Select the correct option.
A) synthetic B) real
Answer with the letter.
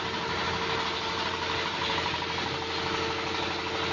B